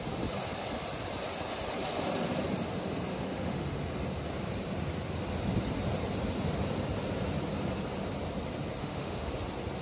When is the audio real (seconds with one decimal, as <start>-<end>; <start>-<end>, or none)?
0.0-3.1; 3.7-8.8; 9.3-9.8